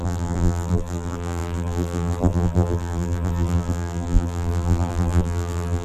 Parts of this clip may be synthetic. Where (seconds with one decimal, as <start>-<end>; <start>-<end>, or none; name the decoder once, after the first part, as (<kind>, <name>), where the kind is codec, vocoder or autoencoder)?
0.0-5.8 (vocoder, BigVGAN v2)